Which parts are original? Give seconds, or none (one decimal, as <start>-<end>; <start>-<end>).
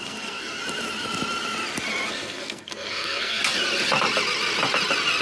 0.6-2.1; 3.4-5.2